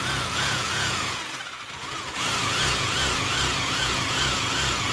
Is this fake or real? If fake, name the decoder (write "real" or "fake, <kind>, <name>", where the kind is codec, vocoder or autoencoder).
fake, vocoder, Vocos